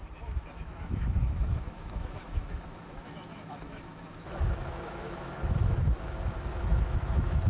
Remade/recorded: remade